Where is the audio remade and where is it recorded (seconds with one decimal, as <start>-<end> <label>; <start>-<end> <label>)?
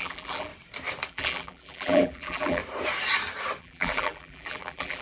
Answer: 0.0-0.5 remade; 0.5-1.1 recorded; 1.1-2.6 remade; 2.6-3.6 recorded; 3.6-5.0 remade